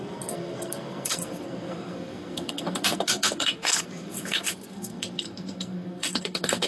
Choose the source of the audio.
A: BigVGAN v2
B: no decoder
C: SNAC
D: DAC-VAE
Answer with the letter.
C